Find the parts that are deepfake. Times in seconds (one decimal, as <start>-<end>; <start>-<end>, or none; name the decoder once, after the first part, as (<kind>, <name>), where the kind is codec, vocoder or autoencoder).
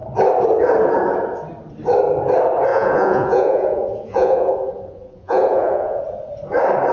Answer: 2.7-6.0 (vocoder, Vocos)